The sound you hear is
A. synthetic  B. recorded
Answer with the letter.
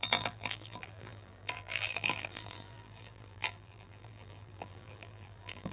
A